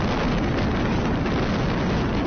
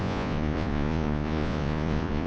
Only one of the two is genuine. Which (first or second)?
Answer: first